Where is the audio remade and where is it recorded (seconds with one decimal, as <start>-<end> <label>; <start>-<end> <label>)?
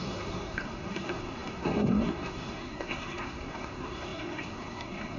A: 0.0-5.2 remade